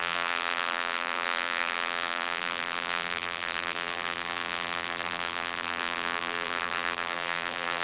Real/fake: fake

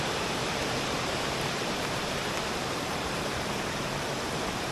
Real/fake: fake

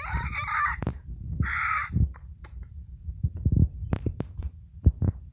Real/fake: fake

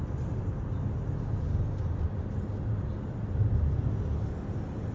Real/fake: real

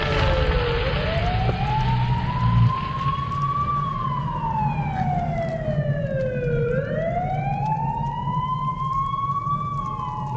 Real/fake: real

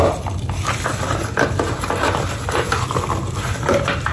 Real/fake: real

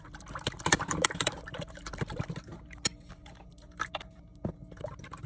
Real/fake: real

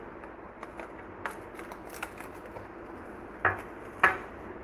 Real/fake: real